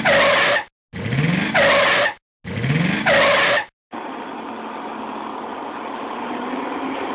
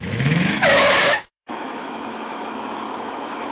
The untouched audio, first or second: first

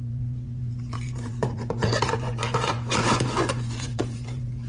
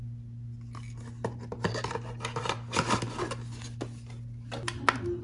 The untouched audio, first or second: second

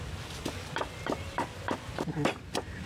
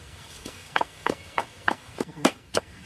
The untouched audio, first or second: first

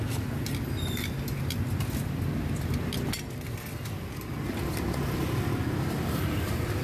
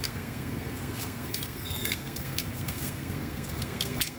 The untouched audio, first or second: first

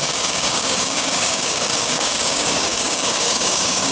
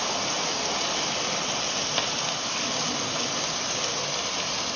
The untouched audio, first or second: second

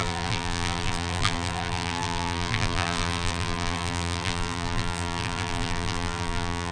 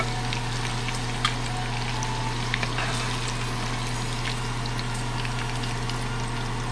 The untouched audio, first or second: second